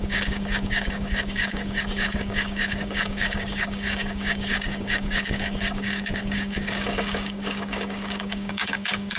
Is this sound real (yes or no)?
no